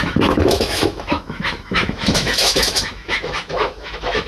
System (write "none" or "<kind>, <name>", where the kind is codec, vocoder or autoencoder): autoencoder, DAC-VAE